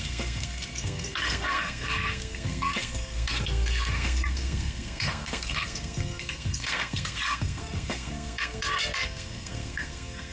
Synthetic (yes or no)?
yes